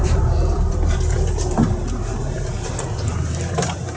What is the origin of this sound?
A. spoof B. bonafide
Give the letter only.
A